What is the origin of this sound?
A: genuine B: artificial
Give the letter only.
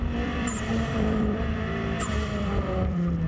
B